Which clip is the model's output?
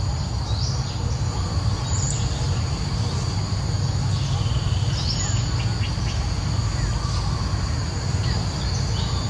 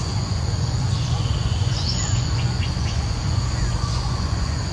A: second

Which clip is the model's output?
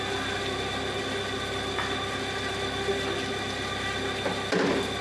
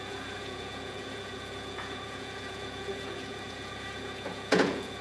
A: second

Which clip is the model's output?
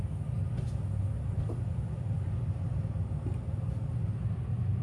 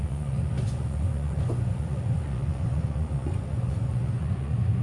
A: second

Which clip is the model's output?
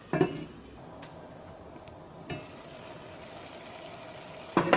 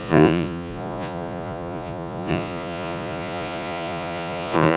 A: second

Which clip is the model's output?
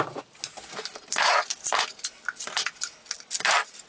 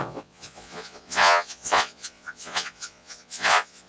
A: second